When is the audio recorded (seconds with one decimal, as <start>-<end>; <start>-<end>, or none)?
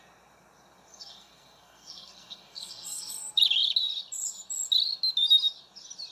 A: 0.0-0.9; 3.1-6.1